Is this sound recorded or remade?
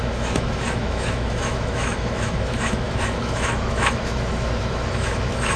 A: remade